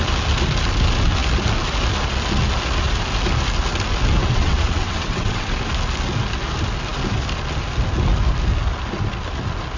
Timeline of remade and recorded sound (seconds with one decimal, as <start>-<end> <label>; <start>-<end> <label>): 0.0-4.2 recorded; 4.2-5.6 remade; 5.6-9.8 recorded